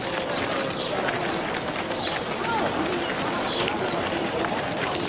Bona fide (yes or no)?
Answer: yes